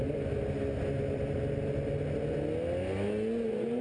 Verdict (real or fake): real